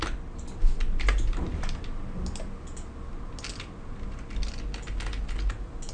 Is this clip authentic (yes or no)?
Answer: yes